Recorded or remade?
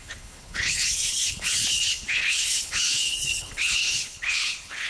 remade